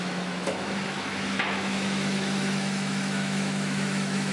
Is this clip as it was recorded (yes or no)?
no